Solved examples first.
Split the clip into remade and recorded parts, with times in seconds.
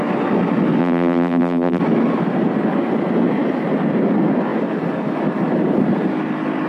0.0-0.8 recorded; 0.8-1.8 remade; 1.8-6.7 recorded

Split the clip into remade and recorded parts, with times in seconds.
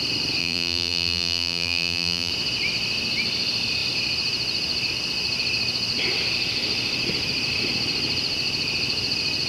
0.0-0.4 recorded; 0.4-2.3 remade; 2.3-9.5 recorded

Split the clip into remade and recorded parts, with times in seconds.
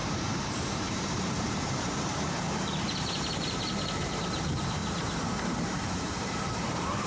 0.0-7.1 remade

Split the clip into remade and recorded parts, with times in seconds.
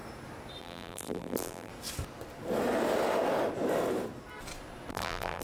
0.0-0.6 recorded; 0.6-1.7 remade; 1.7-4.9 recorded; 4.9-5.4 remade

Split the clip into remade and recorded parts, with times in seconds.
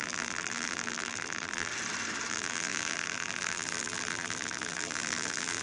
0.0-1.7 remade; 1.7-2.3 recorded; 2.3-5.6 remade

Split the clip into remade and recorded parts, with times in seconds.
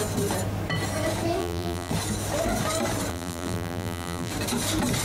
0.0-1.4 recorded; 1.4-1.9 remade; 1.9-3.1 recorded; 3.1-4.3 remade; 4.3-5.0 recorded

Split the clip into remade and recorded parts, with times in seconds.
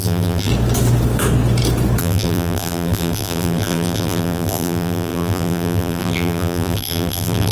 0.0-0.5 remade; 0.5-2.0 recorded; 2.0-7.5 remade